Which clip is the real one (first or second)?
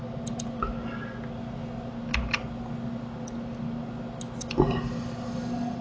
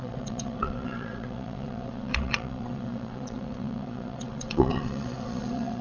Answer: first